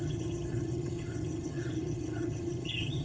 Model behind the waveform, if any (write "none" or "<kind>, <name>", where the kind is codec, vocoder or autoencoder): vocoder, HiFi-GAN